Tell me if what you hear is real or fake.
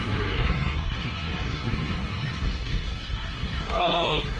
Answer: fake